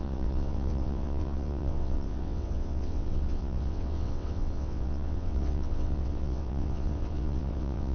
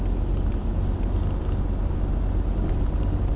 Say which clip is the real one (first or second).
second